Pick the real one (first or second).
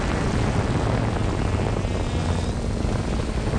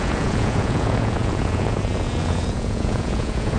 first